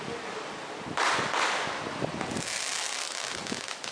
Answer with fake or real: real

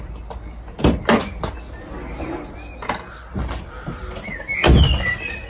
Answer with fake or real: real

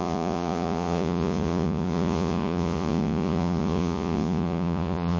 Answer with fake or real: fake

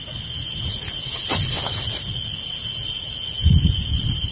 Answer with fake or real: real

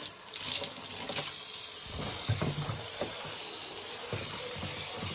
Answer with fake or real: real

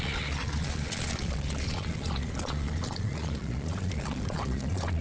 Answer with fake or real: fake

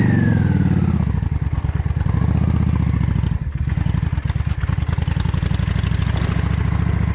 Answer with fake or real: real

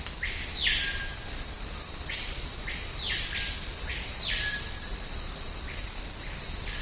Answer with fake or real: real